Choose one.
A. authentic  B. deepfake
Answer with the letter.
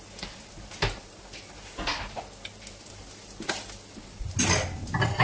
A